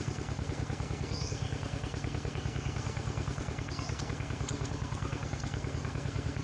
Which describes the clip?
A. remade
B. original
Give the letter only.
A